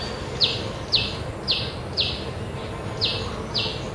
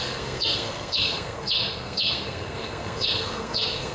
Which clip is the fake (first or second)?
second